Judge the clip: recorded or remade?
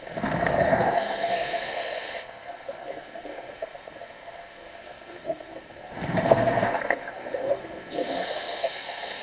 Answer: remade